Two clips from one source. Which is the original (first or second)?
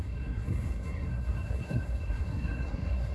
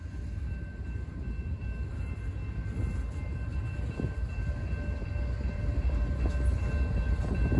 second